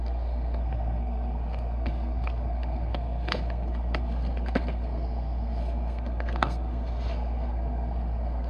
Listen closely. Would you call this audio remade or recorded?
remade